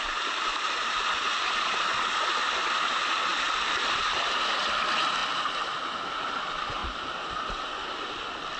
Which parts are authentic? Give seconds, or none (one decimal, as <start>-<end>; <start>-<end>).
0.0-3.3; 4.0-8.6